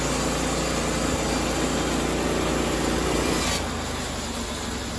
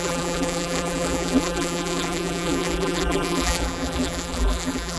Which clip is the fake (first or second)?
second